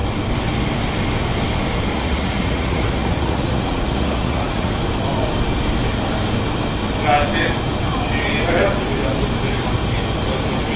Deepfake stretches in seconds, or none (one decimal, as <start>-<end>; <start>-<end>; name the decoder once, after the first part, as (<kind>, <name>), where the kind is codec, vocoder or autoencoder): 1.9-4.7 (vocoder, Vocos)